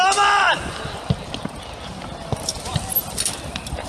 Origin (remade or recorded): recorded